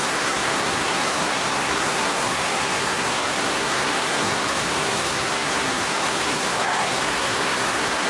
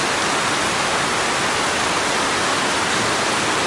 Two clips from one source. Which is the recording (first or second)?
second